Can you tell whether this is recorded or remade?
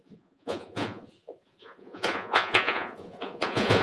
remade